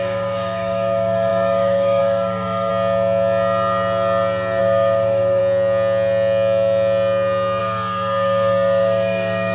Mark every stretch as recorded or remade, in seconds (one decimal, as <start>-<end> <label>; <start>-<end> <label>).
0.0-2.7 remade; 2.7-4.6 recorded; 4.6-5.4 remade; 5.4-7.6 recorded; 7.6-9.5 remade